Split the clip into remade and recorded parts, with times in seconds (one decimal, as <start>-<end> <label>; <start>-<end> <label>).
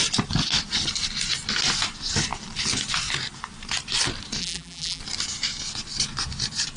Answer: 0.0-4.4 recorded; 4.4-5.0 remade; 5.0-6.8 recorded